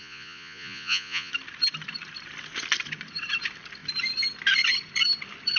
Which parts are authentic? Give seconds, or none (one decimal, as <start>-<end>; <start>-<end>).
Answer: 1.3-5.6